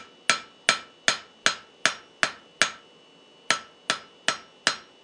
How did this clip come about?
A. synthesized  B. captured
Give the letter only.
B